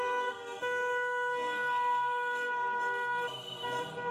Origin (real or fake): fake